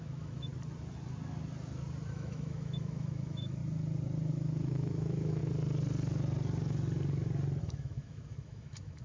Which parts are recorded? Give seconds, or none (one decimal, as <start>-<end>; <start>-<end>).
0.5-2.1; 3.6-4.3; 5.4-7.6